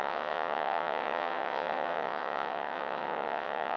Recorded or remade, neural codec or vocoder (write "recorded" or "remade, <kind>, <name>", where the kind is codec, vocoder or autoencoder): remade, vocoder, WaveNeXt